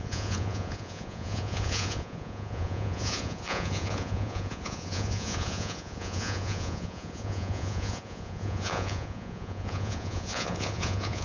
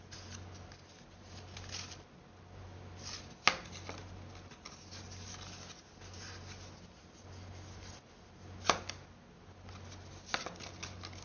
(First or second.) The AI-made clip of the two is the first